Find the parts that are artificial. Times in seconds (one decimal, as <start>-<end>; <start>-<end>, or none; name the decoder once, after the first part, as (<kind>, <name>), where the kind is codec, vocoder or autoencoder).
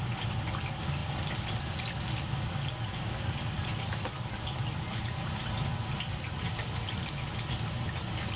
none